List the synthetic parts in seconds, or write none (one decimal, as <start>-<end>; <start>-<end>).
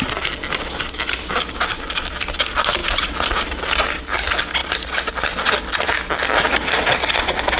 none